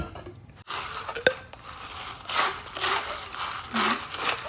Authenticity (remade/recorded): recorded